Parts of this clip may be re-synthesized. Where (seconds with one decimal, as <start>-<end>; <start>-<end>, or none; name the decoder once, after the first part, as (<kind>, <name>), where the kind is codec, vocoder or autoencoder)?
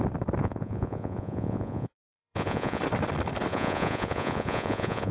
0.4-2.8 (vocoder, Vocos); 3.5-5.1